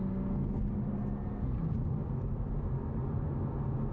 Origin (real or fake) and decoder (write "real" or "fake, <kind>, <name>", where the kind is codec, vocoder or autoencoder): real